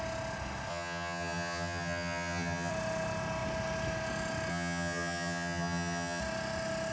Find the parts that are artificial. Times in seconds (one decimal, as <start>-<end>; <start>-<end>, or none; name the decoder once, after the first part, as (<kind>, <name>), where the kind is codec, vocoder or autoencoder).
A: 0.7-2.7 (vocoder, HiFi-GAN); 4.5-6.2